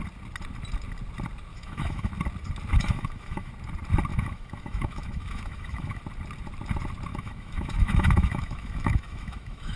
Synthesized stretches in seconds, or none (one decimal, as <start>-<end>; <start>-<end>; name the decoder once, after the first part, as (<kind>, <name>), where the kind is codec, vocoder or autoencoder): 1.5-2.1 (autoencoder, DAC-VAE); 2.7-3.5; 4.1-6.0; 7.1-9.8